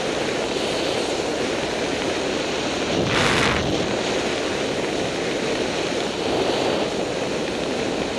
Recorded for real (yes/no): yes